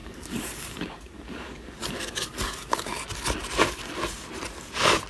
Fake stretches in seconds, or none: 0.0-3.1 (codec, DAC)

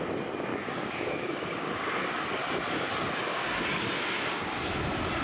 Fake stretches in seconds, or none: 0.5-2.4 (codec, DAC); 3.3-4.5

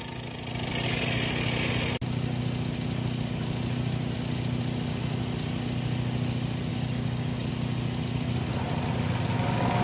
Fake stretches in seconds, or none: 6.7-7.5 (codec, DAC)

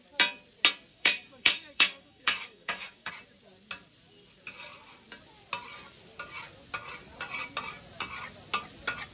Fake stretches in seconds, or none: 0.9-3.1 (codec, DAC)

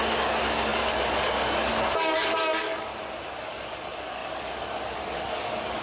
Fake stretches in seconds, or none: 0.0-2.9 (codec, DAC); 3.4-5.8

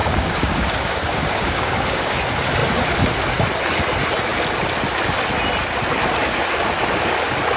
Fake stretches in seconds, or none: 0.0-2.2 (codec, DAC)

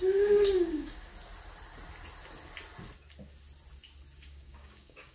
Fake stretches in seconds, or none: 0.0-1.1 (codec, DAC); 4.2-5.1